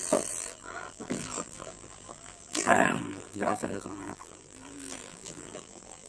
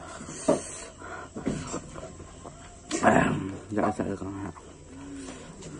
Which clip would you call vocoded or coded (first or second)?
first